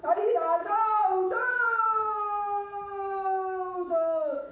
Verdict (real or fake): fake